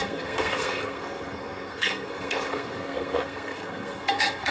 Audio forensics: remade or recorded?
remade